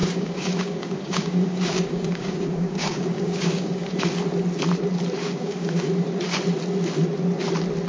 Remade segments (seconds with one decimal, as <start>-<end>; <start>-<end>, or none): 0.0-3.9; 5.2-5.9